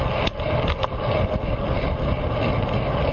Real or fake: real